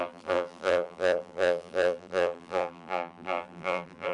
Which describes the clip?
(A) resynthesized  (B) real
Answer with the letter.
A